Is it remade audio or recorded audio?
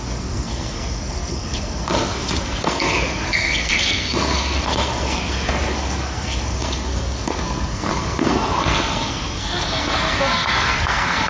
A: remade